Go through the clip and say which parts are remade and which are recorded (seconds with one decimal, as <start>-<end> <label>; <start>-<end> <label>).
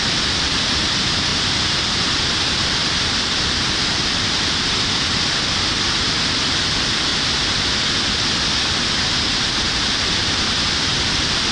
0.0-2.8 remade; 2.8-6.2 recorded; 6.2-7.1 remade; 7.1-10.4 recorded; 10.4-11.5 remade